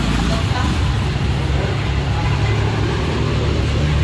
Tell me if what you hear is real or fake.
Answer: real